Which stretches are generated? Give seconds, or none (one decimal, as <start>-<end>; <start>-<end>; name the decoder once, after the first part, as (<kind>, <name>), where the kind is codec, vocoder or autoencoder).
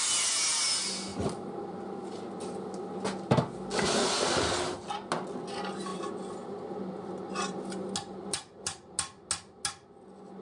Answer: 8.0-8.8 (vocoder, BigVGAN v2)